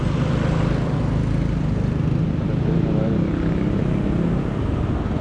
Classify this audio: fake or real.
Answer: real